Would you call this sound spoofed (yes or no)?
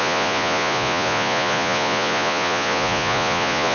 yes